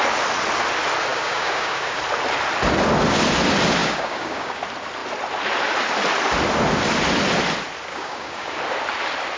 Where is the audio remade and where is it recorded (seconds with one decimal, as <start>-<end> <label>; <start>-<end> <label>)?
0.0-1.1 recorded; 1.1-2.0 remade; 2.0-3.8 recorded; 3.8-4.6 remade; 4.6-7.9 recorded; 7.9-8.6 remade; 8.6-9.4 recorded

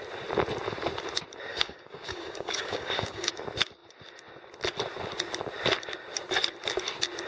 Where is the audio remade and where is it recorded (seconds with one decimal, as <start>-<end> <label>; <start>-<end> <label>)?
0.0-1.5 recorded; 1.5-3.3 remade; 3.3-7.3 recorded

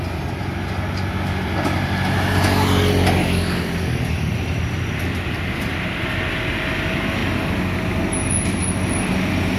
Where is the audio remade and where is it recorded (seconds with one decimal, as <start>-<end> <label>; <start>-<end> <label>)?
0.0-3.2 recorded; 3.2-4.3 remade; 4.3-9.6 recorded

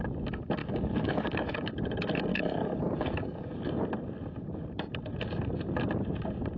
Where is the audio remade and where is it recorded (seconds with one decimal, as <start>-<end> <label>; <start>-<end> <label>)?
0.0-0.6 recorded; 0.6-1.7 remade; 1.7-2.3 recorded; 2.3-3.7 remade; 3.7-6.6 recorded

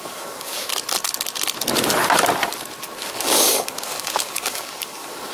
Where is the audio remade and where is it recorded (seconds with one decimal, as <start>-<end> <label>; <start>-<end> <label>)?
0.0-0.7 remade; 0.7-3.0 recorded; 3.0-5.3 remade